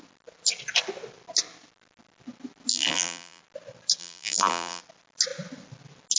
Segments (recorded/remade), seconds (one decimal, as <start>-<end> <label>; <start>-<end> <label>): 0.0-2.7 recorded; 2.7-3.4 remade; 3.4-4.0 recorded; 4.0-4.8 remade; 4.8-6.2 recorded